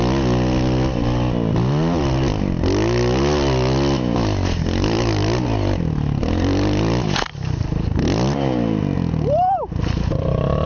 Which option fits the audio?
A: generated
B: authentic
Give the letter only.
B